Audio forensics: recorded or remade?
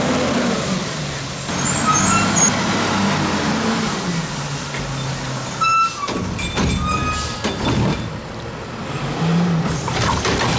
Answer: recorded